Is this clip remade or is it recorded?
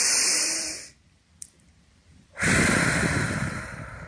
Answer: remade